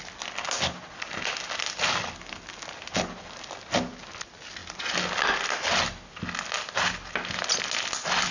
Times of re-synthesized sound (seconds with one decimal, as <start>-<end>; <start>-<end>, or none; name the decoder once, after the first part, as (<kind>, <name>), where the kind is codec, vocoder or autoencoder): none